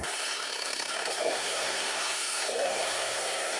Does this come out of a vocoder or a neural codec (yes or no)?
yes